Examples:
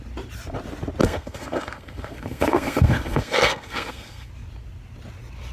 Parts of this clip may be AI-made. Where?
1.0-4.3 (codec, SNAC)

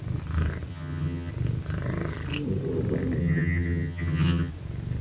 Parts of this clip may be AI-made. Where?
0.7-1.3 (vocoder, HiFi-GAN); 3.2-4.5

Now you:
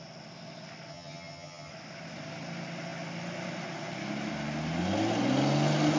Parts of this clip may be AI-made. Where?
0.9-1.7 (vocoder, HiFi-GAN)